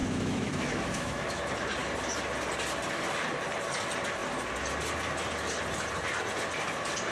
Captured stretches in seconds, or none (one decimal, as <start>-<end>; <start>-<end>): 1.4-7.1